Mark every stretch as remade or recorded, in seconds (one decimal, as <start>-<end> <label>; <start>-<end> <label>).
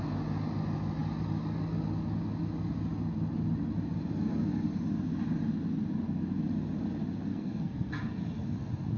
0.0-7.3 recorded; 7.3-7.9 remade; 7.9-9.0 recorded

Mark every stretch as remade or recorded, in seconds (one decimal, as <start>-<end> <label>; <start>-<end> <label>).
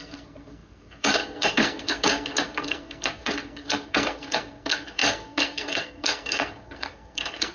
0.0-7.5 remade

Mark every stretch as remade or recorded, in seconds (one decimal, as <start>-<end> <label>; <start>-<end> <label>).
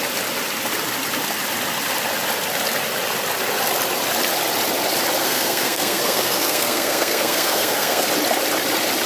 0.0-5.2 recorded; 5.2-8.1 remade; 8.1-9.1 recorded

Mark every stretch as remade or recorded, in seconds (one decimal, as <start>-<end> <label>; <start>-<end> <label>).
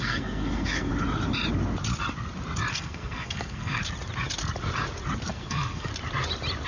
0.0-0.9 remade; 0.9-2.7 recorded; 2.7-3.8 remade; 3.8-5.3 recorded; 5.3-5.9 remade; 5.9-6.7 recorded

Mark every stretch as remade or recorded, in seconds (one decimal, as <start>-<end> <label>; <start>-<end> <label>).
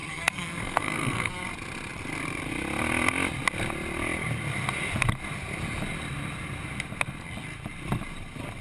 0.0-1.3 remade; 1.3-8.6 recorded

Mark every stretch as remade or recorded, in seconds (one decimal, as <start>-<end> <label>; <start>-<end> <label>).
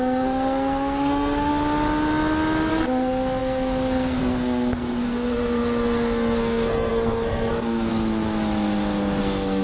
0.0-1.5 remade; 1.5-2.7 recorded; 2.7-7.9 remade; 7.9-9.2 recorded; 9.2-9.6 remade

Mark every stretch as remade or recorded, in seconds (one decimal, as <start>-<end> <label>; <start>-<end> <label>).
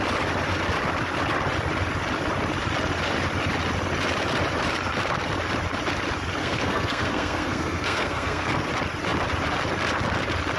0.0-6.4 recorded; 6.4-8.5 remade; 8.5-10.6 recorded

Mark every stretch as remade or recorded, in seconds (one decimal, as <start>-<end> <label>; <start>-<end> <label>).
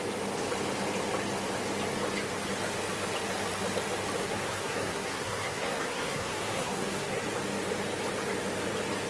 0.0-4.2 recorded; 4.2-7.2 remade; 7.2-9.1 recorded